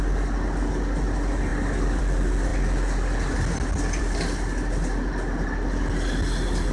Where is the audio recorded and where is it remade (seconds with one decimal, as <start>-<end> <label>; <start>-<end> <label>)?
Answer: 0.0-6.7 recorded